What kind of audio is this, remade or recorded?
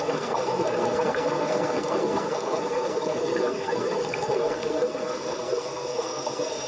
remade